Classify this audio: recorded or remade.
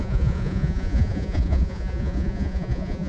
remade